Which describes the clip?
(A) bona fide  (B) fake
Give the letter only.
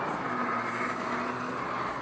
A